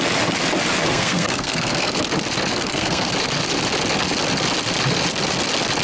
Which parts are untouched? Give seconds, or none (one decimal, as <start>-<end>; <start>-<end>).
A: 0.0-0.8; 2.0-2.5; 3.1-5.8